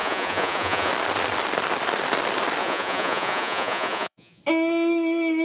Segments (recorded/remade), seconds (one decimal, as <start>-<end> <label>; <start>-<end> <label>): 0.0-0.9 remade; 0.9-2.6 recorded; 2.6-4.4 remade; 4.4-5.4 recorded

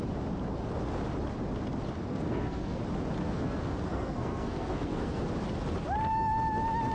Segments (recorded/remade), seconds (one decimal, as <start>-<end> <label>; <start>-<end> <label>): 0.0-2.0 recorded; 2.0-2.8 remade; 2.8-3.2 recorded; 3.2-5.2 remade; 5.2-6.9 recorded